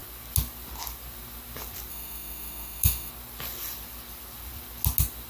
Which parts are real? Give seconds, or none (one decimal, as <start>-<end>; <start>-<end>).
0.0-1.9; 3.1-5.3